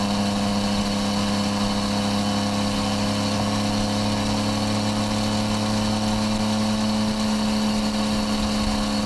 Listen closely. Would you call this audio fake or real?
real